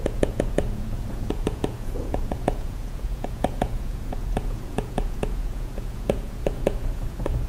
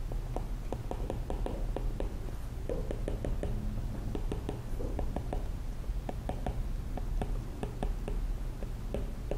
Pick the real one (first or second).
second